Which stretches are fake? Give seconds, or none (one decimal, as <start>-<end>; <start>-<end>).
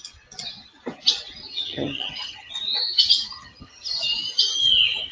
1.5-2.5; 3.3-3.9